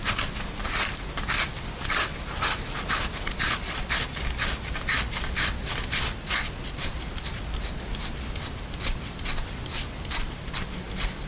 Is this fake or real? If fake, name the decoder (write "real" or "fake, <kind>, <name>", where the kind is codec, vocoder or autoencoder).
real